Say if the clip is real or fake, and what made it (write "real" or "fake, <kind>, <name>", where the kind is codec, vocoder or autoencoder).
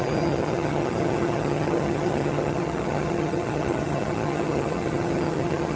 fake, vocoder, HiFi-GAN